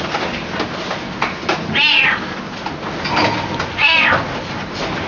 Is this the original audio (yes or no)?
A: yes